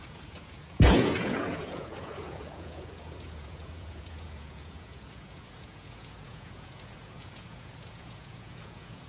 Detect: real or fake fake